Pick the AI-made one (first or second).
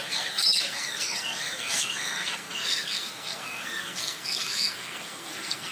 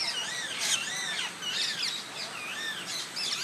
first